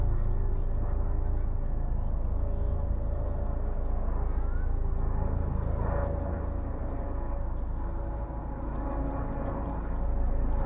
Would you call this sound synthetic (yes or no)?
no